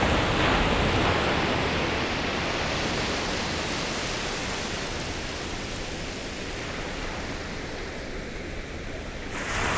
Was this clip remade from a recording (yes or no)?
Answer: no